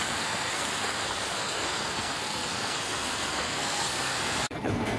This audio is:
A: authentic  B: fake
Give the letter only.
B